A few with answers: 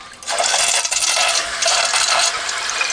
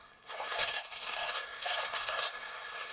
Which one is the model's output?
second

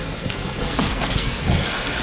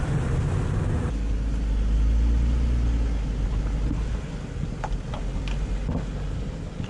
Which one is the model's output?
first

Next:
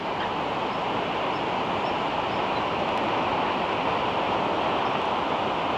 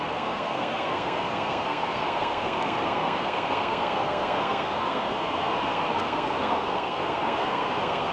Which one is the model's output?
second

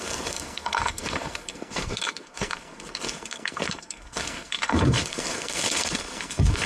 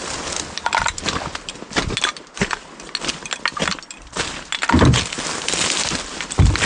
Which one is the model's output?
first